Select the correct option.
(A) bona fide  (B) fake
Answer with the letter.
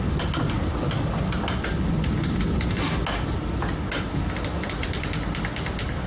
A